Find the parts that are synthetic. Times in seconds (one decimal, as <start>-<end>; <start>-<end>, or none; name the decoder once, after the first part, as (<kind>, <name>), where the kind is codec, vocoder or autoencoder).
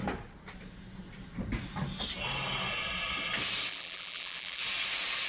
3.7-4.6 (vocoder, BigVGAN v2)